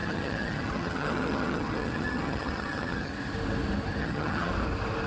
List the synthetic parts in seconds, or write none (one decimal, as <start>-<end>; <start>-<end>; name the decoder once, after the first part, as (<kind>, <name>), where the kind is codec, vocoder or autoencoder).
0.0-3.1 (vocoder, HiFi-GAN); 4.0-4.5

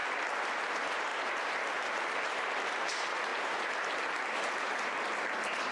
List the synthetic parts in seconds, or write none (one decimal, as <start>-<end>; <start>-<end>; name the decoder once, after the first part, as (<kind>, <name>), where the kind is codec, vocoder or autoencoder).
0.6-5.7 (vocoder, BigVGAN v2)

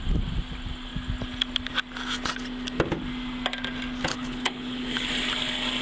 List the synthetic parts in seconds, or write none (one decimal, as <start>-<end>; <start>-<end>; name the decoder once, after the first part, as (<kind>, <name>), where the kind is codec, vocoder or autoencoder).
4.1-5.1 (codec, HILCodec)

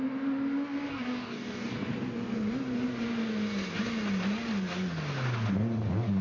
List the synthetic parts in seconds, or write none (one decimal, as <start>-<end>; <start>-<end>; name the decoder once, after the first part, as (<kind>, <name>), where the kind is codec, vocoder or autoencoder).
0.9-1.7 (codec, DAC)

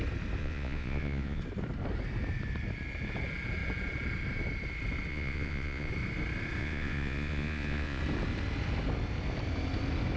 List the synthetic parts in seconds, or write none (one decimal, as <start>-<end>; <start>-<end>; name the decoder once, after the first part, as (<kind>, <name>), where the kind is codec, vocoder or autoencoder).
0.4-1.4 (vocoder, Vocos); 5.1-5.9; 6.6-8.0

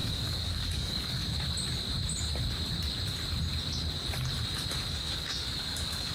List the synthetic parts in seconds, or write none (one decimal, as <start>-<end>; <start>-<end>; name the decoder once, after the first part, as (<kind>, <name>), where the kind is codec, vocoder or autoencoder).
0.0-1.2 (codec, DAC); 4.9-6.1

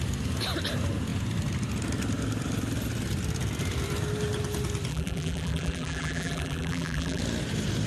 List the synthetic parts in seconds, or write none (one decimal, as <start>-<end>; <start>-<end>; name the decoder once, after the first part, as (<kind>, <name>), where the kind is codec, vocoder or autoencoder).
4.9-7.2 (vocoder, BigVGAN v2)